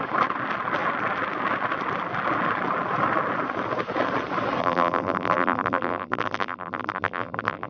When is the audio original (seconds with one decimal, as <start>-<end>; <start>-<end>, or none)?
0.0-4.6